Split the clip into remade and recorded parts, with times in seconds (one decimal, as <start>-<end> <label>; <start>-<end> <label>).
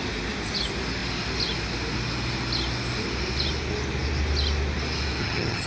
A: 0.0-5.2 recorded; 5.2-5.7 remade